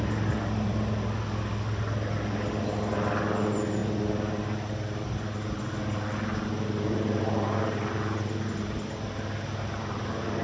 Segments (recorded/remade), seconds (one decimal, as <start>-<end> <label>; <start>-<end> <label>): 0.0-10.4 recorded